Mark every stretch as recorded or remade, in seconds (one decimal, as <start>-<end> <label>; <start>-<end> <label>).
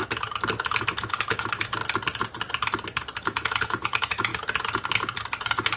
0.0-0.7 recorded; 0.7-1.8 remade; 1.8-3.2 recorded; 3.2-4.3 remade; 4.3-5.8 recorded